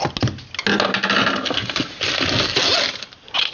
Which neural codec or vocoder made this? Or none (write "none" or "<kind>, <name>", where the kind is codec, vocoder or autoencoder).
none